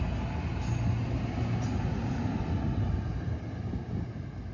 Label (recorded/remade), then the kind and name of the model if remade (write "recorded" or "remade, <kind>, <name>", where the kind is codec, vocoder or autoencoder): recorded